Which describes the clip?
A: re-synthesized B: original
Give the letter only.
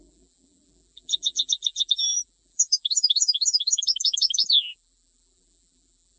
A